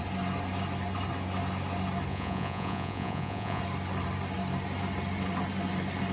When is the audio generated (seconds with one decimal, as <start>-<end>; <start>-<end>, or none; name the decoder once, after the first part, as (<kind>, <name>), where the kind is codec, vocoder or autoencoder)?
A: 2.1-3.6 (vocoder, Vocos)